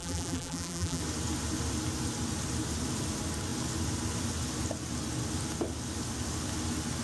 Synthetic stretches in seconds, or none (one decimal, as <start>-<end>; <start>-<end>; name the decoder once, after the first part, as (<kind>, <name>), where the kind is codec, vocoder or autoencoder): 0.0-1.0 (vocoder, BigVGAN v2)